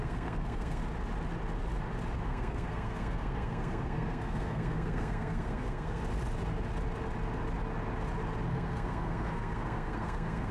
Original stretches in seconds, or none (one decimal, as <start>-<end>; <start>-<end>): 0.8-2.2; 6.0-8.5